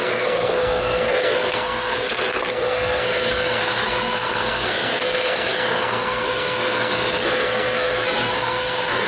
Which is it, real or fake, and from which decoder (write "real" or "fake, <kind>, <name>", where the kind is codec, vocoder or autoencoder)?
fake, codec, SNAC